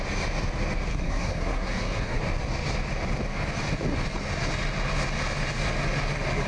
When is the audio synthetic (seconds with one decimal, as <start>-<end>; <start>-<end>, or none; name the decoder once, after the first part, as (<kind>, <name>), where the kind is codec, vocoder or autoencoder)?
0.9-2.2 (codec, SNAC)